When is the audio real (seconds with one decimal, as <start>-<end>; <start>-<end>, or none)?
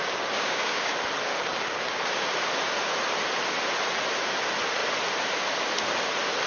0.9-1.3; 2.0-6.5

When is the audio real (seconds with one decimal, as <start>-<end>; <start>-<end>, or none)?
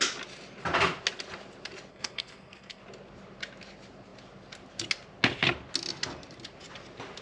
0.0-1.9; 2.8-7.2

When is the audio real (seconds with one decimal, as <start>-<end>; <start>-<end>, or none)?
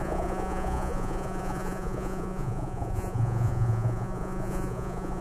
none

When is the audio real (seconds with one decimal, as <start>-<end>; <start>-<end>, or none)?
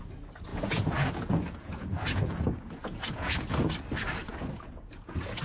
0.0-0.5; 3.7-4.2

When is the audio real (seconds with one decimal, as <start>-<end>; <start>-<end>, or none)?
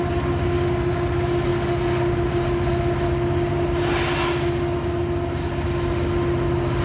0.0-6.8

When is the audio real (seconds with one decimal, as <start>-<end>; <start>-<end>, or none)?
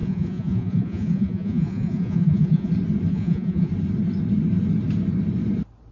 2.7-3.1; 3.7-5.9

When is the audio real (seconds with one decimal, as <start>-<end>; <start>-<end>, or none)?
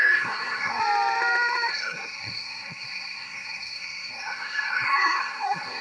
0.8-1.7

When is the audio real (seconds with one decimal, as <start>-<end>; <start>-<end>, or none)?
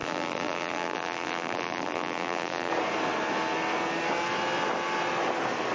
2.7-5.7